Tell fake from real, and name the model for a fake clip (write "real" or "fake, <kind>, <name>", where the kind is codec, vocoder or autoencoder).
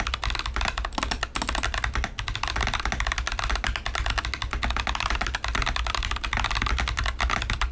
real